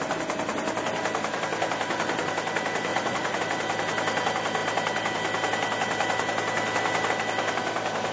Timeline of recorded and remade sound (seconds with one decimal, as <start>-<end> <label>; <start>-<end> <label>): 0.0-2.9 recorded; 2.9-3.4 remade; 3.4-8.1 recorded